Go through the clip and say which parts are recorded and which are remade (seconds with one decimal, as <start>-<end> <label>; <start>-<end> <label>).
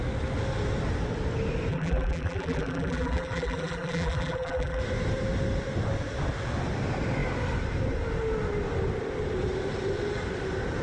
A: 0.0-1.7 recorded; 1.7-4.8 remade; 4.8-10.8 recorded